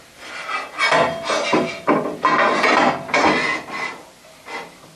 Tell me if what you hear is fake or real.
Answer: real